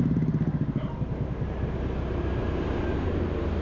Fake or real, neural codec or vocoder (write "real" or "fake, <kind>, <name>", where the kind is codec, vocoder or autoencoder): real